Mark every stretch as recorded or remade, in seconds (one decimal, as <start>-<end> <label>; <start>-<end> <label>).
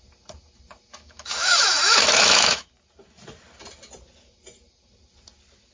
0.0-0.9 recorded; 0.9-2.7 remade; 2.7-5.7 recorded